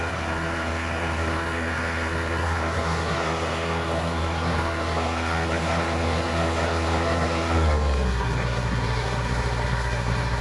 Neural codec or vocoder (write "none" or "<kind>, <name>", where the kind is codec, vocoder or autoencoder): codec, SNAC